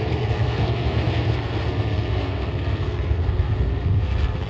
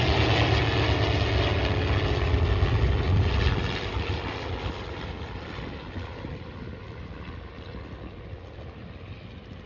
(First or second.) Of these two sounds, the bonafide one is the second